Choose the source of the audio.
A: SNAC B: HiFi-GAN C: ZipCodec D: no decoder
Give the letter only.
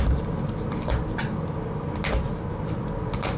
D